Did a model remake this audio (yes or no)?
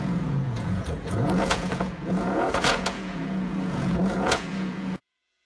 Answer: yes